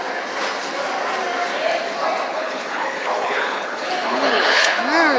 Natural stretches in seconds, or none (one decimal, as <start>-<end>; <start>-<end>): 0.0-2.3; 4.8-5.2